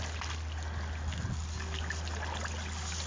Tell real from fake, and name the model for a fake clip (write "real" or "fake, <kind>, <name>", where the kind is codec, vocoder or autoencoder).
real